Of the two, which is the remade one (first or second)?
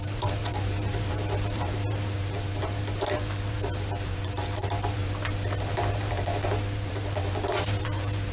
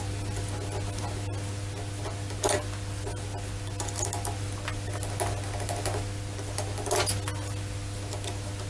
first